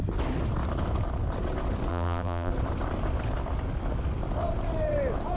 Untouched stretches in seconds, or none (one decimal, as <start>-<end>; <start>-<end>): 0.0-1.9; 2.5-5.4